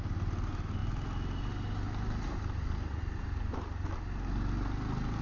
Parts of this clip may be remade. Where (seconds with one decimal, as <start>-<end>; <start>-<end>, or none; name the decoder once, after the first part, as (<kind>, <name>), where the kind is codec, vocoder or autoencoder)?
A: none